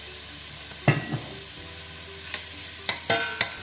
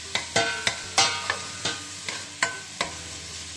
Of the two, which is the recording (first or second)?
second